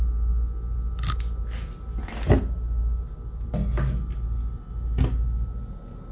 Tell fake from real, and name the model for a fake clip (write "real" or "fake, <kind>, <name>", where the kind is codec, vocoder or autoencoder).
real